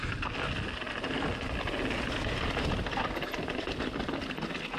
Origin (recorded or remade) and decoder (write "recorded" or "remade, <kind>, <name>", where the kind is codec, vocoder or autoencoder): recorded